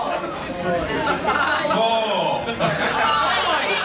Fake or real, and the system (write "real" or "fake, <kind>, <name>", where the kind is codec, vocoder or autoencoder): real